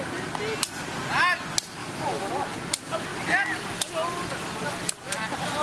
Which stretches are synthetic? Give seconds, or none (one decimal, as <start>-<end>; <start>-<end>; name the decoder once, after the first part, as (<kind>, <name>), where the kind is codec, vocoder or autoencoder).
1.8-2.3 (autoencoder, DAC-VAE)